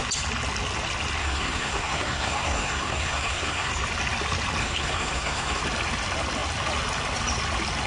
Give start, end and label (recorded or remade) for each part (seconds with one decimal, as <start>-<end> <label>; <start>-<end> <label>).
0.0-1.2 recorded; 1.2-3.7 remade; 3.7-4.6 recorded; 4.6-5.6 remade; 5.6-7.9 recorded